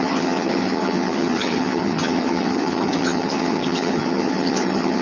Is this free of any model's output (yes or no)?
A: no